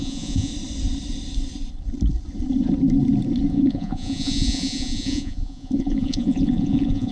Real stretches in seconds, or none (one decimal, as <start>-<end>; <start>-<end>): 0.5-3.5